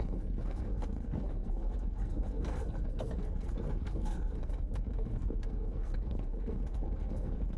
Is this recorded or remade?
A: remade